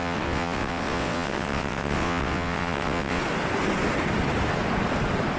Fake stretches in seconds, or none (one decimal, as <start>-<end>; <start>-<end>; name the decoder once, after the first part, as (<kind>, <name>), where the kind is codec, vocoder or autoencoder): 0.0-3.2 (vocoder, WaveNeXt)